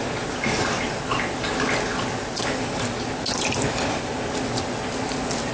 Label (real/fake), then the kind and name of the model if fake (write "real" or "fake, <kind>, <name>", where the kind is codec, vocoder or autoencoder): real